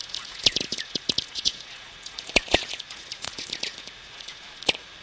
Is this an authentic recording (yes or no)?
no